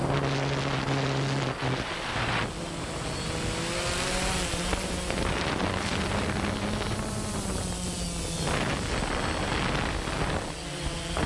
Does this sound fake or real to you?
real